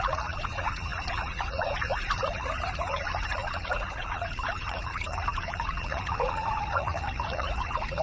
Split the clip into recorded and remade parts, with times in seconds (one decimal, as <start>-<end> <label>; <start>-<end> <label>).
0.0-8.0 remade